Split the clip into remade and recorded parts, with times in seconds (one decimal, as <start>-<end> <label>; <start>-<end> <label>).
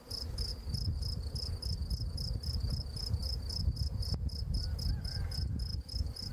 0.0-6.3 recorded